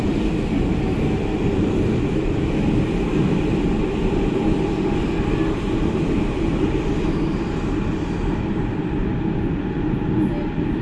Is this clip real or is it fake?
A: real